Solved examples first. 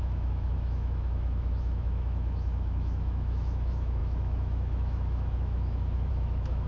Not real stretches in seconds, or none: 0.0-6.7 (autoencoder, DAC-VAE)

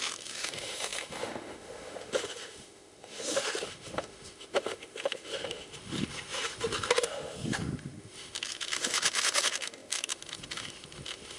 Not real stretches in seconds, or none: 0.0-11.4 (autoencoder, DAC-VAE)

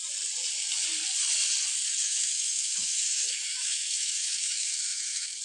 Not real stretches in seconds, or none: 2.0-5.4 (autoencoder, DAC-VAE)

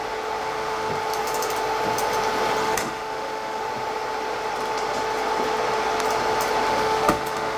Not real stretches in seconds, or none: 0.4-0.9 (autoencoder, DAC-VAE); 2.6-3.6; 6.7-7.6

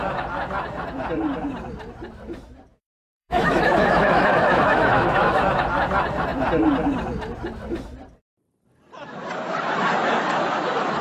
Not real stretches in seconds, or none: 2.7-5.4 (autoencoder, DAC-VAE)